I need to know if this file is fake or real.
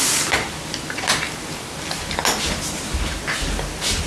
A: real